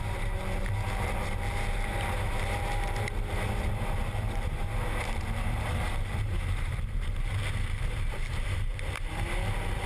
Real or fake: fake